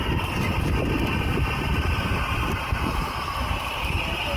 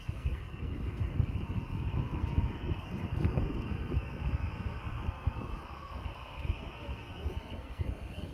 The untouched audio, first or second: first